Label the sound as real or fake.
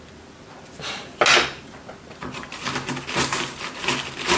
real